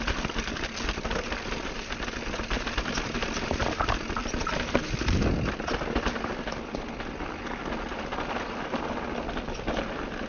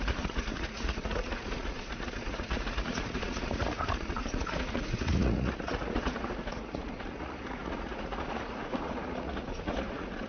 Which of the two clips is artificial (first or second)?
second